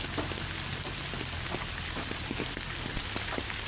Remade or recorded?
recorded